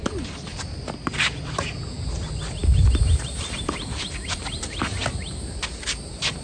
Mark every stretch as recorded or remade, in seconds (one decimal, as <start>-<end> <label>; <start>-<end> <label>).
0.0-0.5 recorded; 0.5-1.6 remade; 1.6-6.4 recorded